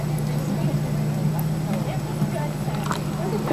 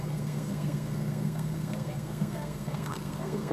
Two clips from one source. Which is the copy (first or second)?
second